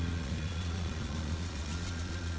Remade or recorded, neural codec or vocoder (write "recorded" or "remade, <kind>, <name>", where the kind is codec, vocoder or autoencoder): remade, vocoder, Vocos